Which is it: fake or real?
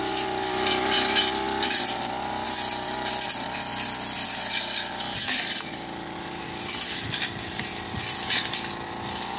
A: real